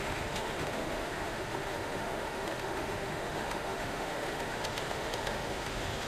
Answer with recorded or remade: remade